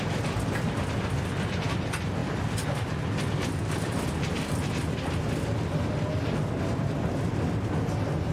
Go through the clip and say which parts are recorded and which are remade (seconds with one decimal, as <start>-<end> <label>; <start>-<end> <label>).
0.0-8.3 recorded